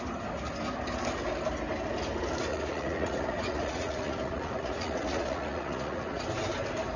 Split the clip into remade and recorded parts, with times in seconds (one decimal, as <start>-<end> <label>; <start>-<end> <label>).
0.0-2.5 recorded; 2.5-6.2 remade; 6.2-7.0 recorded